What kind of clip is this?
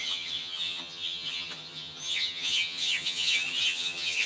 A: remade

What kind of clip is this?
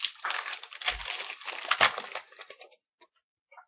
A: recorded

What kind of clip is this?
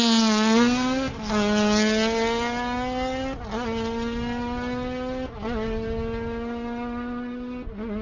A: recorded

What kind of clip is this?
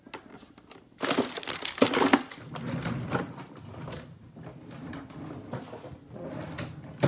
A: recorded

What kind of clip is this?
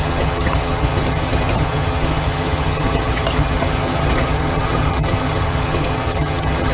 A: remade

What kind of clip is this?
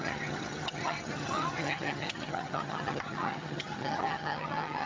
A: remade